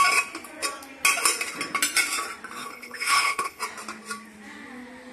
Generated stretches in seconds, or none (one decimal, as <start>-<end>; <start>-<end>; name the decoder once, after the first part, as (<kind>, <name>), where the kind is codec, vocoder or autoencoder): 2.6-3.6 (codec, HILCodec)